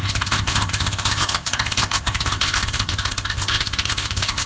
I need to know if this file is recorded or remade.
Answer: remade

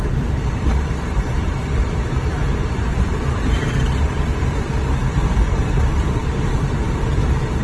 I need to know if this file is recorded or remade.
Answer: remade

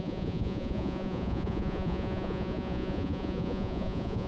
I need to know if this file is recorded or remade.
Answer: remade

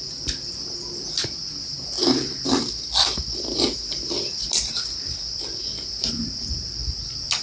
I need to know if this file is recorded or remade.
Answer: recorded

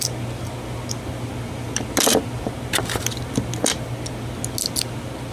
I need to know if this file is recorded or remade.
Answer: recorded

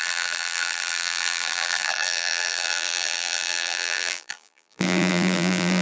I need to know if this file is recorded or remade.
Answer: remade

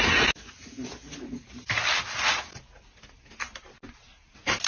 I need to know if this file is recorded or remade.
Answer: recorded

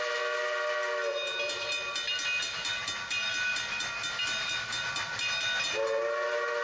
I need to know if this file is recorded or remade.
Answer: recorded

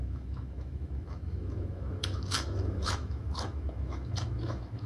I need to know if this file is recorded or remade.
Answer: remade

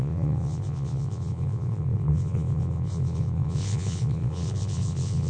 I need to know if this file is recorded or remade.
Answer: remade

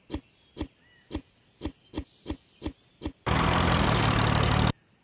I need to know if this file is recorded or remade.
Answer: recorded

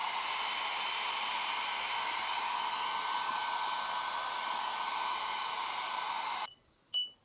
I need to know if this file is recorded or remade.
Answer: recorded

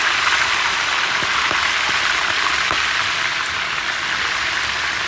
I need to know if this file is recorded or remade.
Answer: recorded